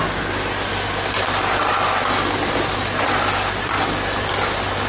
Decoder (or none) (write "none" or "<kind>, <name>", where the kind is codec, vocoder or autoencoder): none